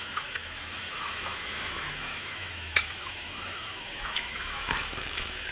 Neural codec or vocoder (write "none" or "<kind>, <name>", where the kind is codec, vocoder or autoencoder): autoencoder, DAC-VAE